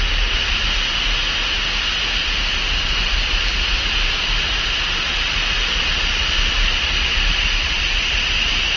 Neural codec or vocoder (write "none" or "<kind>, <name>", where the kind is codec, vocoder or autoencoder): none